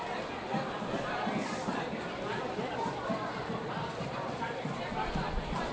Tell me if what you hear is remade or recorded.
remade